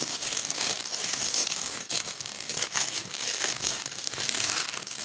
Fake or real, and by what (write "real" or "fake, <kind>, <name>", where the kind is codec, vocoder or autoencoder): fake, codec, DAC